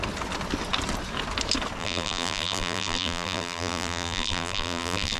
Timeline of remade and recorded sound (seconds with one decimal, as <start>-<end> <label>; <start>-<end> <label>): 0.0-1.8 recorded; 1.8-5.2 remade